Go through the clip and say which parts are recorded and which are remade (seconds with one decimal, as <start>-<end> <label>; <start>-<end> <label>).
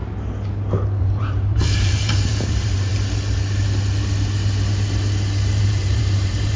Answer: 0.0-1.0 recorded; 1.0-2.9 remade; 2.9-5.6 recorded; 5.6-6.6 remade